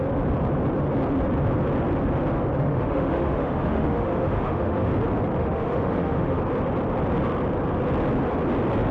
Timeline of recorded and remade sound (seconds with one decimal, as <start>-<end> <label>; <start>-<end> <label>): 0.0-2.6 recorded; 2.6-4.9 remade; 4.9-5.4 recorded; 5.4-6.4 remade; 6.4-8.9 recorded